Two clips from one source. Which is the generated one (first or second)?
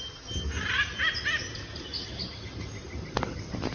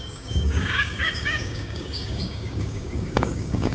second